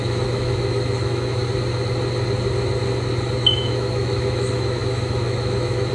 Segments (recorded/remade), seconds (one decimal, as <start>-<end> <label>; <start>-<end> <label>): 0.0-1.4 remade; 1.4-3.4 recorded; 3.4-5.9 remade